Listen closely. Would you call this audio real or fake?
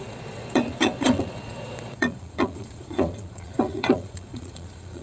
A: fake